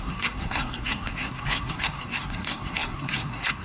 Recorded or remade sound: remade